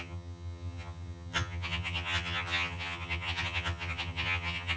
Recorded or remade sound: remade